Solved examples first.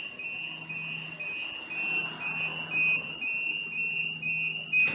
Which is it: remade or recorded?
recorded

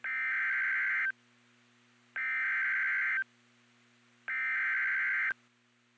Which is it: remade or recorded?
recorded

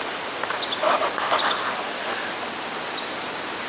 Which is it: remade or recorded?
recorded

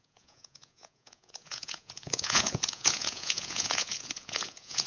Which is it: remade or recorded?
remade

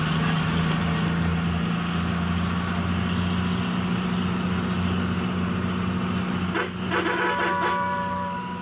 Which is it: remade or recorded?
recorded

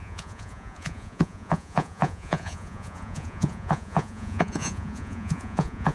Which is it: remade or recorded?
remade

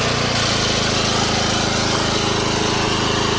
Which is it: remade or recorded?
recorded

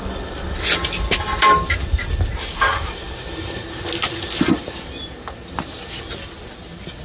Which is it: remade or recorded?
recorded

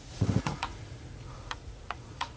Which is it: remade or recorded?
remade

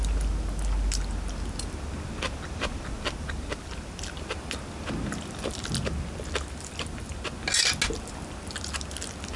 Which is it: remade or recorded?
recorded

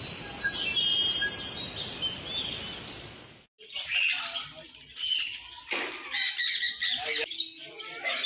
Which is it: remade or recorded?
recorded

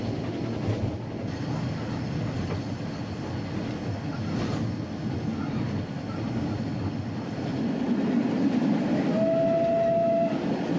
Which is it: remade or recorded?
recorded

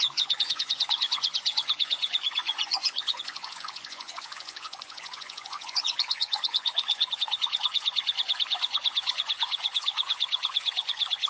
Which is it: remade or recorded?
remade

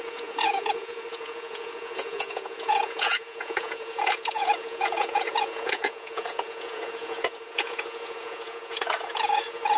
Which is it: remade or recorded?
remade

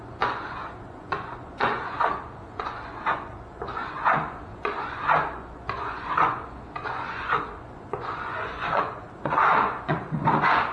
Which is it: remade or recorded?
remade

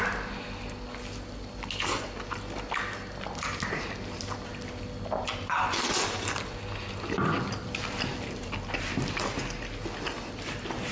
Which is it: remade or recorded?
recorded